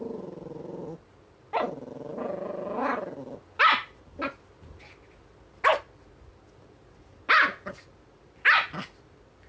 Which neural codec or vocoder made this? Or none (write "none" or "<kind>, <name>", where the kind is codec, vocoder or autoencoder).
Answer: none